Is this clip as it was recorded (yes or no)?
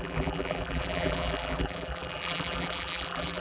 no